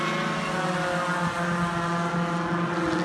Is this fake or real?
real